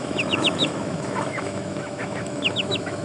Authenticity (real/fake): fake